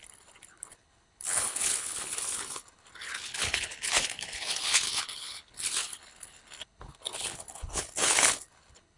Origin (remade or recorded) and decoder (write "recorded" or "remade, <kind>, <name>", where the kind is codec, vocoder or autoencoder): remade, codec, HILCodec